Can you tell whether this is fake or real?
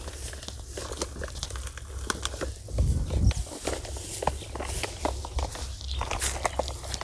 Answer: real